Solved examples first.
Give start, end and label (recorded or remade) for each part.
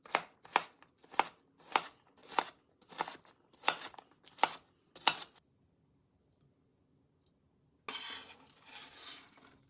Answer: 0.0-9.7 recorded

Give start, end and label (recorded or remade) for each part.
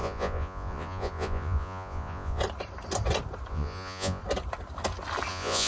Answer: 0.0-2.4 remade; 2.4-3.5 recorded; 3.5-4.2 remade; 4.2-5.3 recorded; 5.3-5.7 remade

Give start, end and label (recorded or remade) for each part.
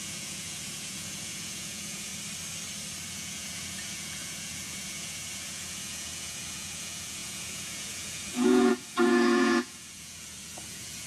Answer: 0.0-2.1 remade; 2.1-3.1 recorded; 3.1-11.1 remade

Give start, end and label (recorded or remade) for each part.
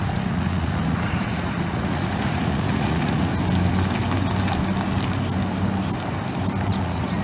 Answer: 0.0-3.3 remade; 3.3-6.7 recorded; 6.7-7.2 remade